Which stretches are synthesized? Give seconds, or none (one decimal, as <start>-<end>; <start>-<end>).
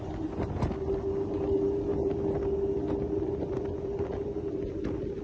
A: none